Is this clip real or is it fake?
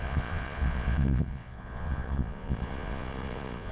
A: fake